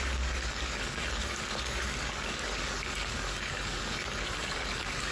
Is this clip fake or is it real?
fake